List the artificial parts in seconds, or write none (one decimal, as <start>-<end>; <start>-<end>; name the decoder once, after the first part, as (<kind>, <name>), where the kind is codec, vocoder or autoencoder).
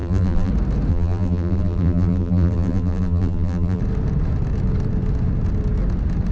0.0-0.5 (vocoder, BigVGAN v2); 0.9-3.8